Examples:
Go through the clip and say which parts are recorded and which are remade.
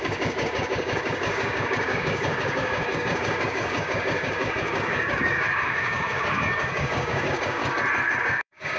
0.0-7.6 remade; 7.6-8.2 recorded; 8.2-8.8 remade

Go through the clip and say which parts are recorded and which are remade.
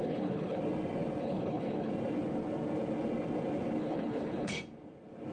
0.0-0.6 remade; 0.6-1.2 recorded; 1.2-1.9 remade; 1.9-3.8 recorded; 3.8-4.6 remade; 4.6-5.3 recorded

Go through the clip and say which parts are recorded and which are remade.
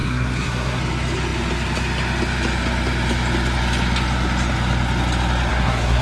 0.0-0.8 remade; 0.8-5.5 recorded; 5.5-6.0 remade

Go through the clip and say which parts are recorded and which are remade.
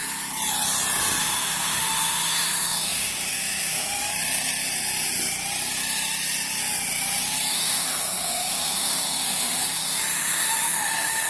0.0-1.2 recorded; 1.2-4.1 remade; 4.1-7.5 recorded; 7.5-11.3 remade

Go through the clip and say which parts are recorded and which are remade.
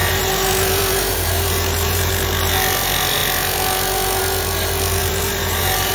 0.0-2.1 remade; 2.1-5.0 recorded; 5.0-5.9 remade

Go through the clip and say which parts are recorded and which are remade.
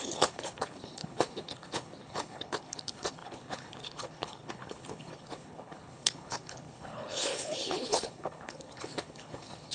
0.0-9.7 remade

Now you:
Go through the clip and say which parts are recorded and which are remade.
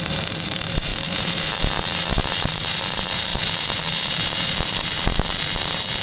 0.0-6.0 remade